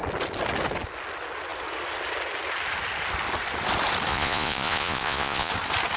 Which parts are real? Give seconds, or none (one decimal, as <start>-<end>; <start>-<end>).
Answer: 0.0-4.1; 5.5-6.0